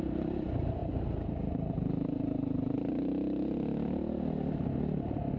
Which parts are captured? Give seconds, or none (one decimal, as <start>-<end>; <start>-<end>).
0.0-5.4